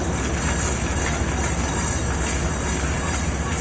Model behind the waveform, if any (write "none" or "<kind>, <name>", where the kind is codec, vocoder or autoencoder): none